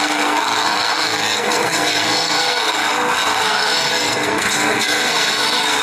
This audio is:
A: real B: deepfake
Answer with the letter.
B